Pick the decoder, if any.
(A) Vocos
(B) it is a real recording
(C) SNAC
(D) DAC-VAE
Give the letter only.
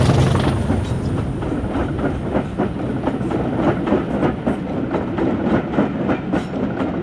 B